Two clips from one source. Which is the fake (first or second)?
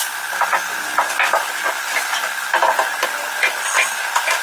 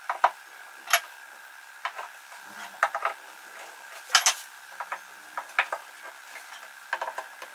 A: first